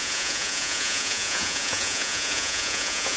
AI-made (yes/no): yes